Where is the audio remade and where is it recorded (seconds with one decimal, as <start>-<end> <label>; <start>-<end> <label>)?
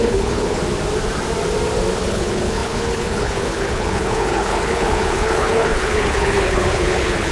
0.0-0.6 remade; 0.6-2.0 recorded; 2.0-7.3 remade